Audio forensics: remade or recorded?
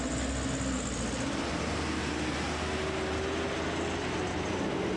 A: recorded